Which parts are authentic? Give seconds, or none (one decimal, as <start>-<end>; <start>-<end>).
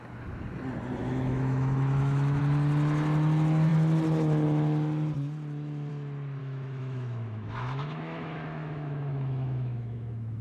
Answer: 0.0-1.0; 2.4-6.4